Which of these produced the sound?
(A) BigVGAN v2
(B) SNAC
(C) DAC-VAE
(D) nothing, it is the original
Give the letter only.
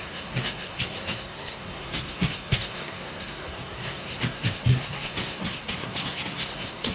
B